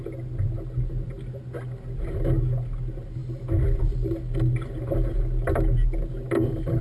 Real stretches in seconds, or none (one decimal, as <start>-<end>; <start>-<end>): 0.0-6.8